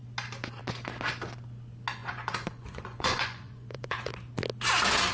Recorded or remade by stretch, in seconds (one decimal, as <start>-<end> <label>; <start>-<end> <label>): 0.0-2.0 recorded; 2.0-4.1 remade; 4.1-5.1 recorded